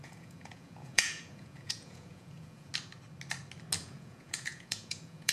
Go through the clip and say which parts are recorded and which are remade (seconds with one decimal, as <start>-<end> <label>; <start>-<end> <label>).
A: 0.0-2.7 remade; 2.7-3.8 recorded; 3.8-5.3 remade